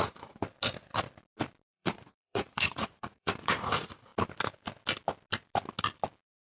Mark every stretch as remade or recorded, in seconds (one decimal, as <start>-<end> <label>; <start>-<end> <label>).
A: 0.0-0.4 remade; 0.4-1.7 recorded; 1.7-4.1 remade; 4.1-6.5 recorded